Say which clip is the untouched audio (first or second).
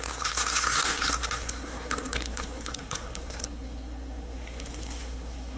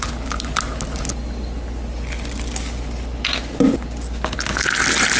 second